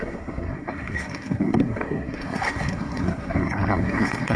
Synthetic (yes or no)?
yes